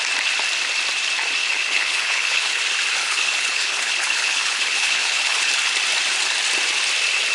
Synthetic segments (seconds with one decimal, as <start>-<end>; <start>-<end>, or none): 1.4-2.6; 3.0-5.5